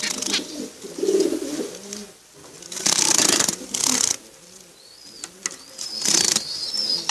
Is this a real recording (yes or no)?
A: yes